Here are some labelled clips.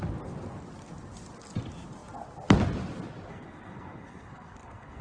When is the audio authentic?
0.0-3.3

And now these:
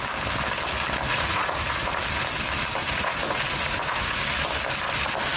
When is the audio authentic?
0.0-1.1; 2.0-2.8; 4.2-5.4

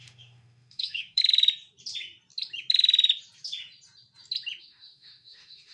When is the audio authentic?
1.2-4.6

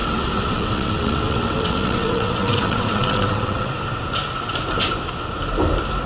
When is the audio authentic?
3.7-6.1

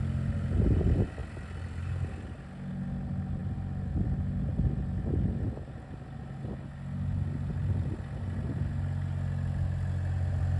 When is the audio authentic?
0.0-10.6

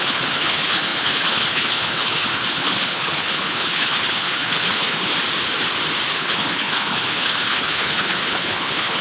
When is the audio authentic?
5.1-6.1

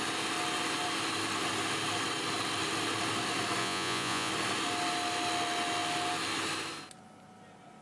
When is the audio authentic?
0.0-3.6; 4.3-7.8